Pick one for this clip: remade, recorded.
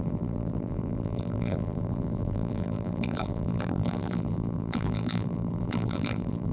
remade